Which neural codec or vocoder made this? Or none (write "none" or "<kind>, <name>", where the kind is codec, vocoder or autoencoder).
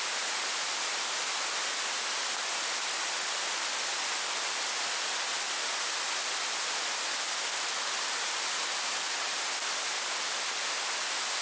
none